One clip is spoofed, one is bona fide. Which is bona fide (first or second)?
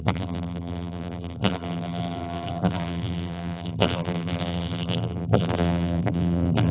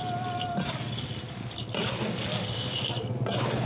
second